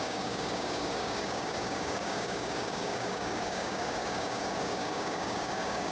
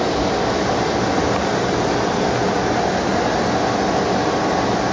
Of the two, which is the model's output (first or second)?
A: first